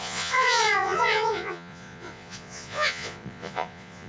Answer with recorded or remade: remade